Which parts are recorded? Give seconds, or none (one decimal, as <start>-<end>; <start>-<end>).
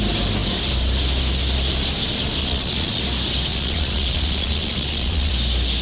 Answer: 0.0-2.4; 3.0-3.5; 5.3-5.8